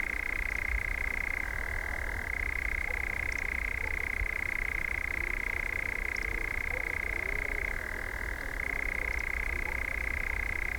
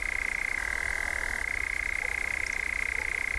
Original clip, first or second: second